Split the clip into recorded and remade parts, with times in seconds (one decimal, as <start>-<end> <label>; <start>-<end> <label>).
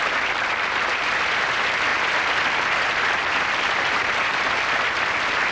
0.0-1.9 recorded; 1.9-4.0 remade; 4.0-5.5 recorded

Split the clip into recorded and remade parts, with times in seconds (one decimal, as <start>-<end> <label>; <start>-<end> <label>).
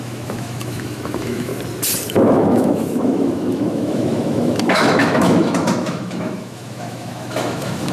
0.0-1.5 remade; 1.5-2.1 recorded; 2.1-7.9 remade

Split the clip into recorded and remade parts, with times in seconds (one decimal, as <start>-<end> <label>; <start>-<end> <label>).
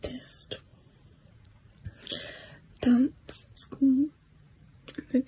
0.0-0.7 recorded; 0.7-2.3 remade; 2.3-3.5 recorded; 3.5-5.3 remade